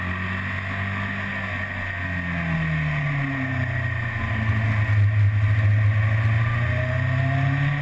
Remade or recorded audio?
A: recorded